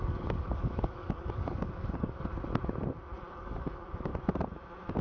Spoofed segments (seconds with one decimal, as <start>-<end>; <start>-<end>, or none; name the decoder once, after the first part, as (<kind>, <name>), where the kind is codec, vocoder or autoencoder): 0.0-2.3 (codec, DAC); 3.3-4.1